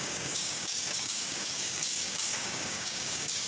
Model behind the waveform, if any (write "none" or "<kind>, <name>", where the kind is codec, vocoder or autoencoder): codec, DAC